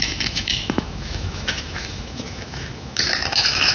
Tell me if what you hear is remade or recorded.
remade